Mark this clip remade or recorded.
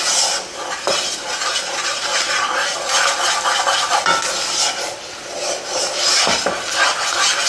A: recorded